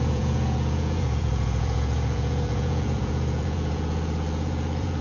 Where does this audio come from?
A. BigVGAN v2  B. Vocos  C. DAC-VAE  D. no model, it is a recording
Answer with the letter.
B